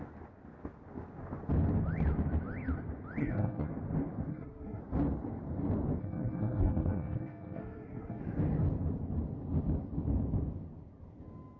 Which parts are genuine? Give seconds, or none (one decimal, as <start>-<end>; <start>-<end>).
0.0-3.2; 3.7-4.3; 4.8-6.0; 8.2-11.6